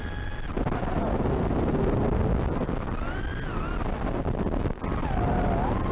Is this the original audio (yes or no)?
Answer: yes